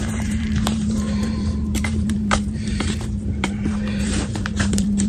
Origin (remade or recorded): remade